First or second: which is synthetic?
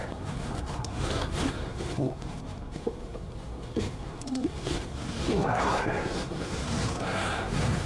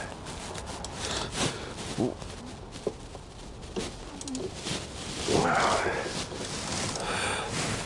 first